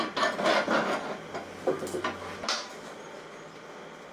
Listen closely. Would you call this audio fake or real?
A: real